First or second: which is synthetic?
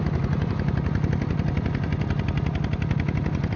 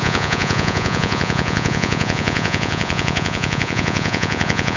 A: second